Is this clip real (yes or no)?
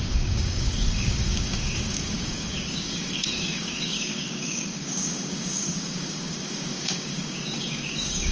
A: no